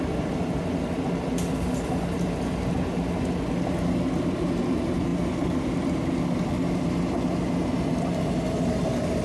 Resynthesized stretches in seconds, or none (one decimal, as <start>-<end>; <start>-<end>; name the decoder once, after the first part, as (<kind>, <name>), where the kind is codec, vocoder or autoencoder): none

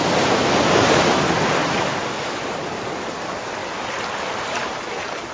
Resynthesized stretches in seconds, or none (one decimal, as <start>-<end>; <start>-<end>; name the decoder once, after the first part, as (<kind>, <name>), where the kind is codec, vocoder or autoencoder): 1.9-2.7 (vocoder, BigVGAN v2)